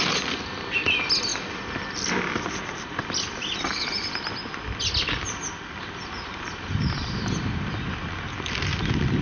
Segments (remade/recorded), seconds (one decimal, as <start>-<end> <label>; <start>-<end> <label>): 0.0-9.2 recorded